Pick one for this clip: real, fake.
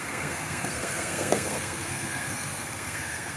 fake